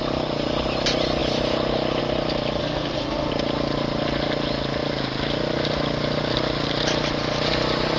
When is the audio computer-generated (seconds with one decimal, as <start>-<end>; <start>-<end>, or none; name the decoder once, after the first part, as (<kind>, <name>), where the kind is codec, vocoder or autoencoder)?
2.6-3.3 (codec, SNAC)